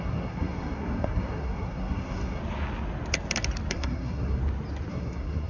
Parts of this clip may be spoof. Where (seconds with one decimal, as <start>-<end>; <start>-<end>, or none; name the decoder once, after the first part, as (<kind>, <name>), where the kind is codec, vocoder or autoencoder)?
0.0-2.4 (codec, SNAC); 3.7-4.4; 4.9-5.5